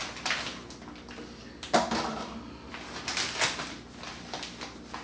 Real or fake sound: real